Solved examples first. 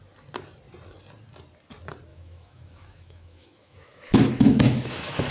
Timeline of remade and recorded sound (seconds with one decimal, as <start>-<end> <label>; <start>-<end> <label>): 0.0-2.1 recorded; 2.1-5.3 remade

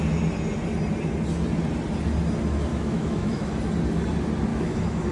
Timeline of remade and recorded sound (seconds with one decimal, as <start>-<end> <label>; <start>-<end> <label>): 0.0-2.7 recorded; 2.7-3.5 remade; 3.5-4.5 recorded; 4.5-5.1 remade

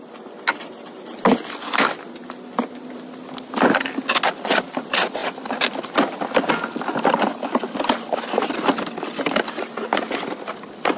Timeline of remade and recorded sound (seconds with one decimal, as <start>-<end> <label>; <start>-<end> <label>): 0.0-11.0 recorded

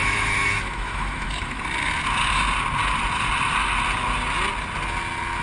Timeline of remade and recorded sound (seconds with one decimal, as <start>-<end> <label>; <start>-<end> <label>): 0.0-1.6 remade; 1.6-5.4 recorded

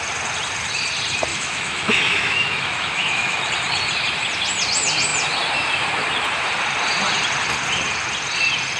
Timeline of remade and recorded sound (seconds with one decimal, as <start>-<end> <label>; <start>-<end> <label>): 0.0-1.3 recorded; 1.3-3.5 remade; 3.5-8.8 recorded

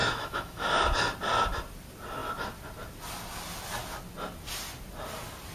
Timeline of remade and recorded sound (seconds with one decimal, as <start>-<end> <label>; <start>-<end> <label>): 0.0-0.7 remade; 0.7-5.5 recorded

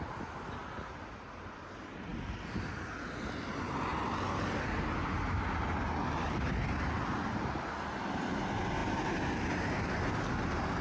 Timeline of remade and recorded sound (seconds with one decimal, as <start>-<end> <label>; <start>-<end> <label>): 0.0-10.8 recorded